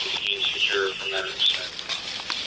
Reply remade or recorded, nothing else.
recorded